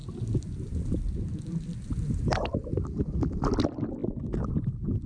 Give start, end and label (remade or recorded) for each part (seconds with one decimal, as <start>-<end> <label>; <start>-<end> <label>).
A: 0.0-5.1 recorded